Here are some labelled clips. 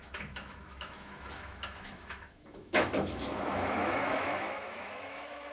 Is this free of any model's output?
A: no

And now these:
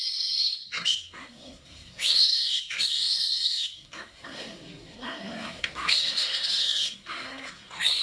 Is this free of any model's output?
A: no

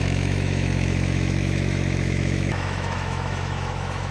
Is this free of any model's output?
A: no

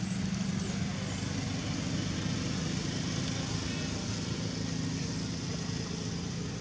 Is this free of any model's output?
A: yes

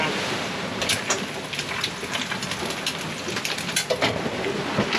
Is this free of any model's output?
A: yes